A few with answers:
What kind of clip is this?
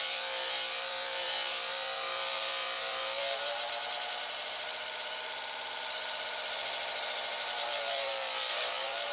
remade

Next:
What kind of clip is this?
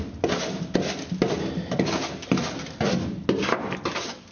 recorded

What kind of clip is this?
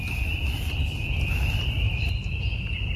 recorded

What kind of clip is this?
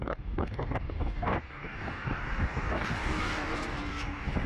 remade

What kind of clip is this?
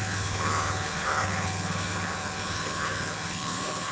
remade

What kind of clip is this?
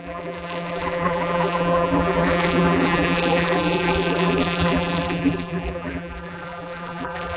remade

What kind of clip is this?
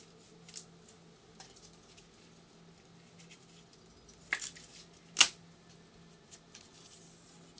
recorded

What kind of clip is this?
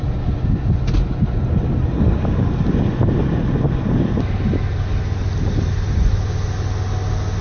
recorded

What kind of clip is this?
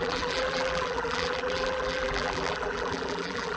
remade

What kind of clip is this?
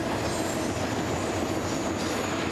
recorded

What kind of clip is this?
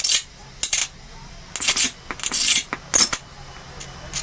recorded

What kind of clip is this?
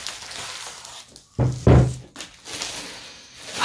recorded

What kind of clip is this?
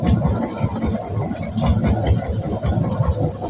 recorded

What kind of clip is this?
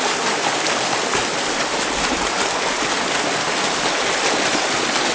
recorded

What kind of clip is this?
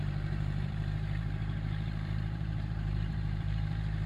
remade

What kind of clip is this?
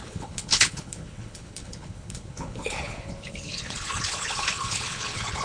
remade